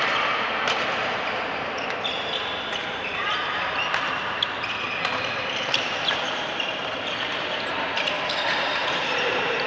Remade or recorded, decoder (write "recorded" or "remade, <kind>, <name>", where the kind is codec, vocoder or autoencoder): remade, vocoder, BigVGAN v2